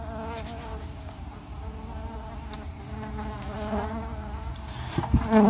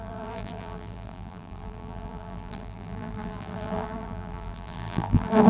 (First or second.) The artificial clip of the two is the second